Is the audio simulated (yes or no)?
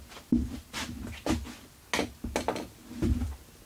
no